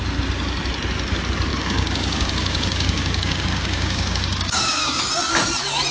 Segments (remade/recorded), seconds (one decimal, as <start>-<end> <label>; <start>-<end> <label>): 0.0-1.5 recorded; 1.5-5.0 remade; 5.0-5.9 recorded